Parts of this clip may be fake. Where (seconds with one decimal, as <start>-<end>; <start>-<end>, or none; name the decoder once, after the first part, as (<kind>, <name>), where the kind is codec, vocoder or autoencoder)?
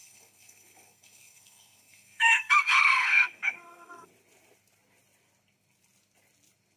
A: 0.0-4.1 (codec, SNAC)